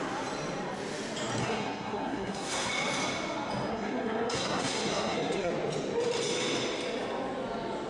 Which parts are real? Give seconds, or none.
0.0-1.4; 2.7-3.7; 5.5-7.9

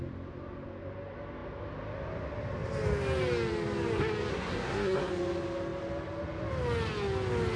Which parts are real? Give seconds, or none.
0.0-4.3; 5.1-7.6

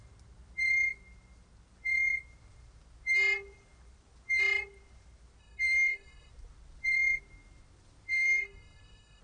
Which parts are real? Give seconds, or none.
0.0-5.4; 6.3-8.1

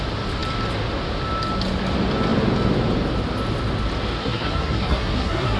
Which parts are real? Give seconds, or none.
0.0-4.2

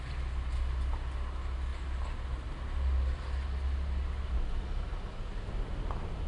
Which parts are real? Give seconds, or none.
0.0-6.3

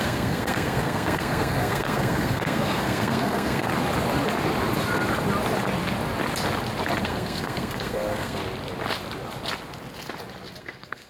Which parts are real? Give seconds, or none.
3.7-7.0; 8.4-10.6

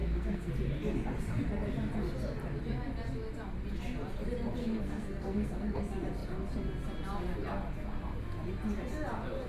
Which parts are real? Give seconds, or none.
0.5-4.6; 5.8-9.5

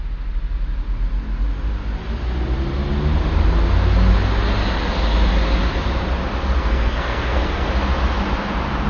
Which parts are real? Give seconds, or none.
0.0-6.6; 7.7-8.9